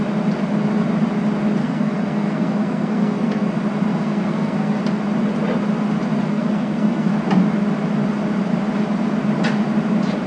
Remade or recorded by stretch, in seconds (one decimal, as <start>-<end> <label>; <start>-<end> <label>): 0.0-1.6 recorded; 1.6-3.5 remade; 3.5-3.9 recorded; 3.9-4.8 remade; 4.8-6.3 recorded; 6.3-7.1 remade; 7.1-10.3 recorded